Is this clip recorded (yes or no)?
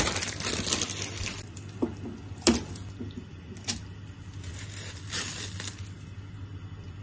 yes